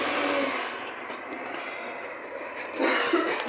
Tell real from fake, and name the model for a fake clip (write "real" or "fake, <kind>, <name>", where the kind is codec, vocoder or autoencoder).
real